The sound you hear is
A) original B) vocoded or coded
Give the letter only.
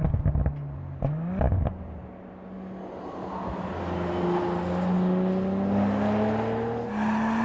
A